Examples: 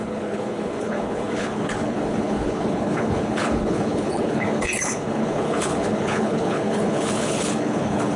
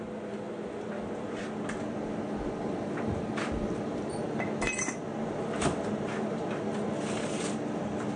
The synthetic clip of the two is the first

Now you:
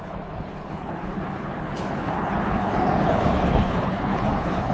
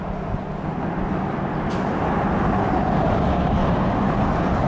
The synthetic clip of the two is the first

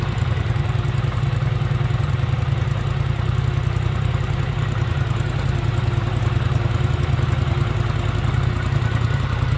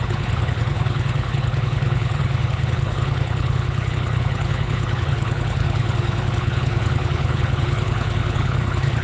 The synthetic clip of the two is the second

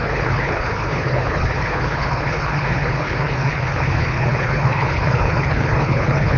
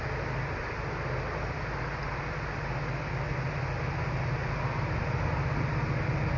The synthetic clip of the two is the first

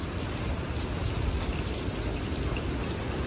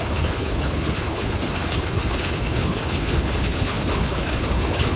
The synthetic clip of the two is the second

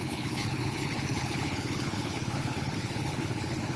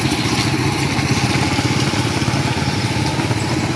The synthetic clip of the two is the first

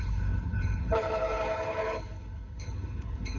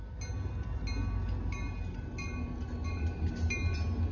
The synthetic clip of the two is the first